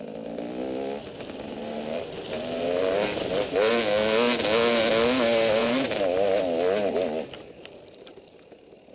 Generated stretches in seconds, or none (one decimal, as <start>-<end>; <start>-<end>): 1.6-3.7; 5.6-6.4